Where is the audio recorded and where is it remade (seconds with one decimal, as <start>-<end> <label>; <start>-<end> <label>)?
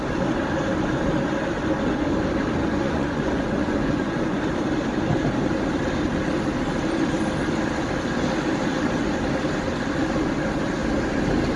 0.0-2.6 recorded; 2.6-4.4 remade; 4.4-11.6 recorded